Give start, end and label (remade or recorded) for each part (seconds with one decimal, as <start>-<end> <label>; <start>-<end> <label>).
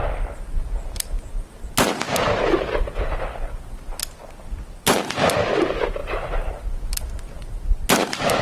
0.0-6.0 recorded; 6.0-6.5 remade; 6.5-8.4 recorded